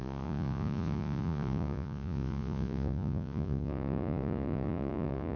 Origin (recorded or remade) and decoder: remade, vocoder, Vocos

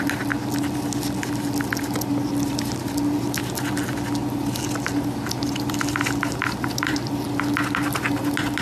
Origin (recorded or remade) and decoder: recorded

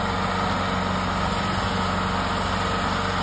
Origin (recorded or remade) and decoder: recorded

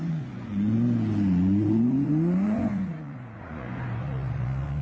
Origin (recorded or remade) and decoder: remade, vocoder, Vocos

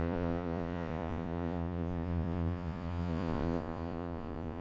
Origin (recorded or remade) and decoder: remade, vocoder, Vocos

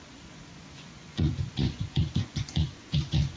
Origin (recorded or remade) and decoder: remade, vocoder, Vocos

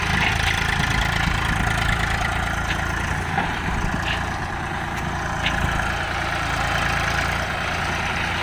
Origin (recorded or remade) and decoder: recorded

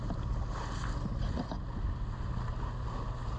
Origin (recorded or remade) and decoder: recorded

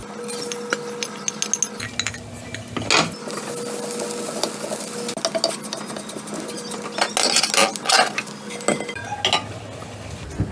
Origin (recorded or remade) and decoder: recorded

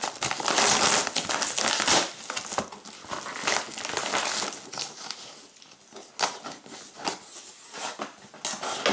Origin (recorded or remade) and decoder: recorded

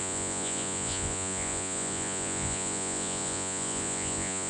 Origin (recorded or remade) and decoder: remade, vocoder, Vocos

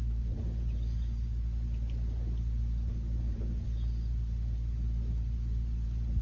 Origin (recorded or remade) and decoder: recorded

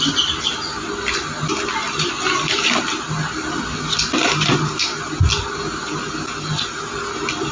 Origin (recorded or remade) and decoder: recorded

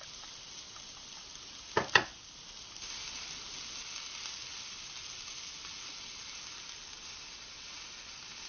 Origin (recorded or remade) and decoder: recorded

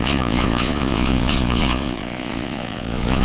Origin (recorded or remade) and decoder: remade, vocoder, Vocos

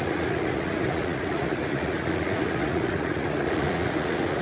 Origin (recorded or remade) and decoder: remade, vocoder, Vocos